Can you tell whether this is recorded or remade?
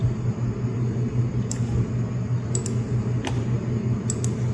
recorded